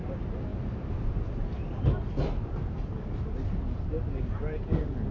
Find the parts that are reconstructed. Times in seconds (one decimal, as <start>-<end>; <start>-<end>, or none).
none